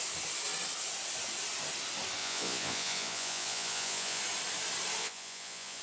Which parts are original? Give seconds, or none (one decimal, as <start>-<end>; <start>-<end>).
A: 0.0-2.2; 4.2-5.0